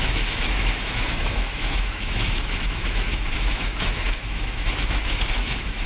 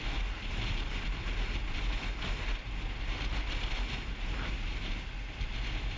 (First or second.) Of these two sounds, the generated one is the first